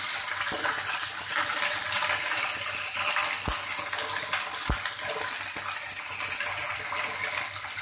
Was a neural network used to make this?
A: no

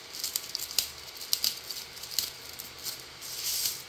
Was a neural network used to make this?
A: no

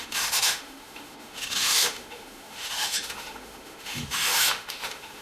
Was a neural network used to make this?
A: yes